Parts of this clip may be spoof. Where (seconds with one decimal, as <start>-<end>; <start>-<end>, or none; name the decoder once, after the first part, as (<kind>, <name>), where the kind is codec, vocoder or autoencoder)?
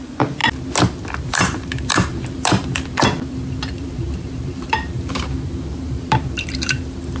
0.0-0.4 (vocoder, BigVGAN v2); 1.2-7.2